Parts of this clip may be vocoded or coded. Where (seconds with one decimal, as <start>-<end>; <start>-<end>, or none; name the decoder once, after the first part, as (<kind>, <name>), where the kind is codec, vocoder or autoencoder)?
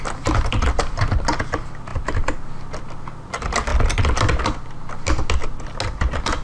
none